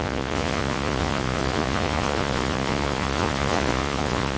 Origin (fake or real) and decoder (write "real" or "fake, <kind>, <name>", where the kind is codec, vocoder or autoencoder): fake, vocoder, Vocos